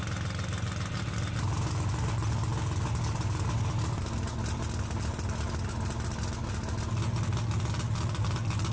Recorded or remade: recorded